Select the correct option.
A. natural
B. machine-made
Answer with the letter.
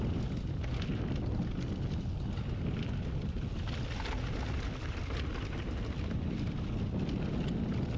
A